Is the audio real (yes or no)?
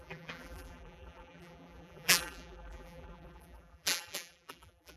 no